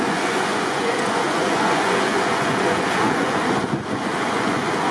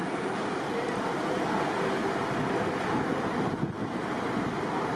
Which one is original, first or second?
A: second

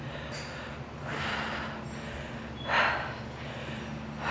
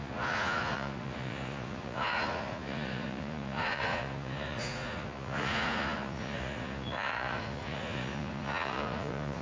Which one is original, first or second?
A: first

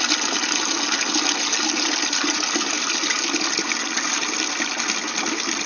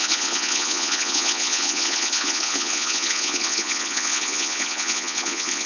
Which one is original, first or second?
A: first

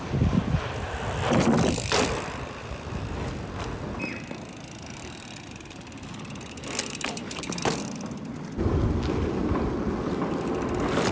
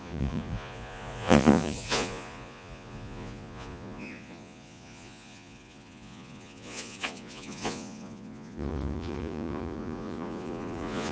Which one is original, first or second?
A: first